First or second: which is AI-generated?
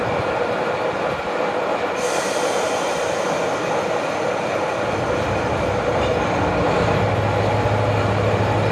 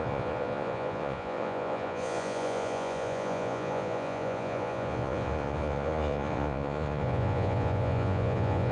second